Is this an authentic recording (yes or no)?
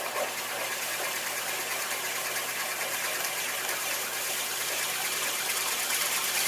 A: no